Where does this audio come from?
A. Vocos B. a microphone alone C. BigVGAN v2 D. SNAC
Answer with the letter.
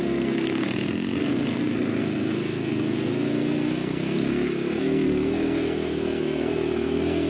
D